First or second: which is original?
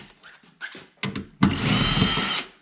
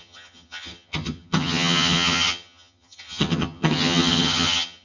first